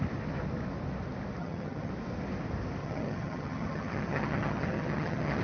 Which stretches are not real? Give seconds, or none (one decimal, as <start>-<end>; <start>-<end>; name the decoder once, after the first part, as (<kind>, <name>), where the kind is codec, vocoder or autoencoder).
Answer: 1.4-1.9 (vocoder, HiFi-GAN); 2.8-5.4